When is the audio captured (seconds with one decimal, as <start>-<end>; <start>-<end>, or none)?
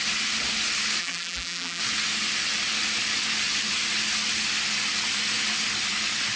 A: 0.0-1.0; 1.8-6.4